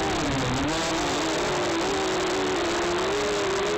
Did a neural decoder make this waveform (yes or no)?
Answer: no